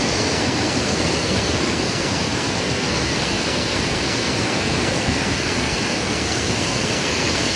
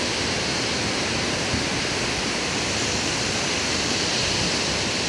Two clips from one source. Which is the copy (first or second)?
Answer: first